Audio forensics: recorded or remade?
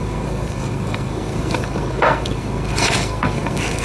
remade